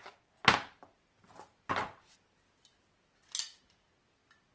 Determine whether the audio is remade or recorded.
recorded